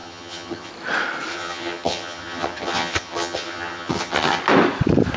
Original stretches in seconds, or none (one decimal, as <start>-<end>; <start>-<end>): 0.7-1.3; 4.4-5.2